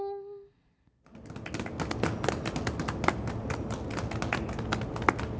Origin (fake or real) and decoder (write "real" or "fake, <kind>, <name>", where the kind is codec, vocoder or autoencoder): real